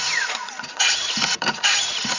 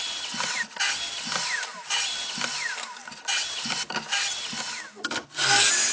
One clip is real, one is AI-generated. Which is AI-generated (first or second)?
first